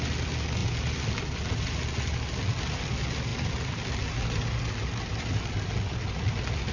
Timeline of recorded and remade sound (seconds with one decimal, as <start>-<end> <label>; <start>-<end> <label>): 0.0-6.7 recorded